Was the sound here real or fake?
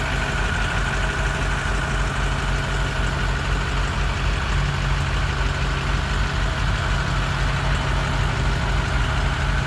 real